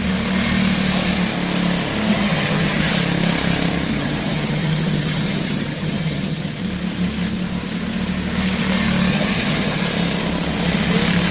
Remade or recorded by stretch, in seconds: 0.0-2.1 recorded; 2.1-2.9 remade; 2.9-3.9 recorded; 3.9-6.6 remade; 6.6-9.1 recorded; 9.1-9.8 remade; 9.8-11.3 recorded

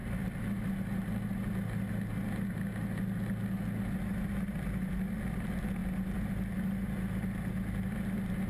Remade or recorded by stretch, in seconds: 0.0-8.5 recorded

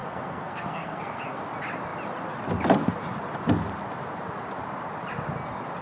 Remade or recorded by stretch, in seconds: 0.0-1.4 remade; 1.4-5.8 recorded

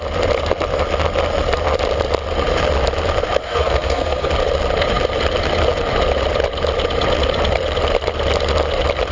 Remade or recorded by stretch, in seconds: 0.0-3.4 recorded; 3.4-4.3 remade; 4.3-9.1 recorded

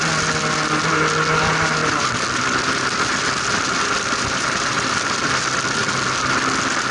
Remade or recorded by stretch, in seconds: 0.0-1.8 recorded; 1.8-5.9 remade; 5.9-6.9 recorded

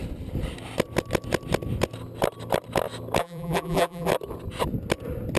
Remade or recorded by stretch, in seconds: 0.0-3.2 recorded; 3.2-4.1 remade; 4.1-5.4 recorded

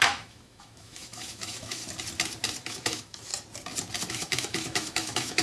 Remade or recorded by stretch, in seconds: 0.0-1.8 remade; 1.8-2.7 recorded; 2.7-3.3 remade; 3.3-4.1 recorded; 4.1-5.4 remade

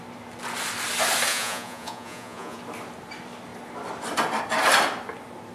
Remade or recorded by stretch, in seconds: 0.0-1.3 recorded; 1.3-2.6 remade; 2.6-5.5 recorded